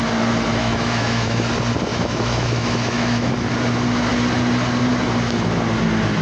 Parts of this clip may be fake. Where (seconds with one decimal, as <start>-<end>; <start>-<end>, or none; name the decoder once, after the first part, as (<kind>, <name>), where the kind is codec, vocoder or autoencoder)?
0.5-1.5 (autoencoder, DAC-VAE); 1.9-3.3